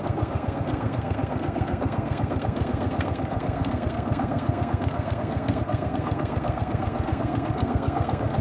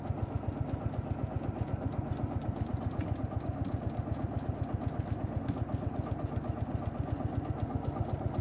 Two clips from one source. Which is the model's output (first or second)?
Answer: first